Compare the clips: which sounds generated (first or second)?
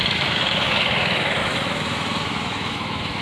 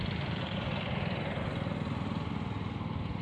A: first